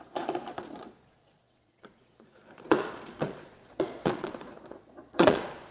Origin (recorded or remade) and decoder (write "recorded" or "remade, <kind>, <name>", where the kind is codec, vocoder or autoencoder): remade, vocoder, Vocos